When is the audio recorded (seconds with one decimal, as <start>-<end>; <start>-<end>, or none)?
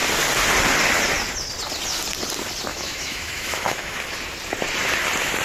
0.0-2.7; 4.0-5.4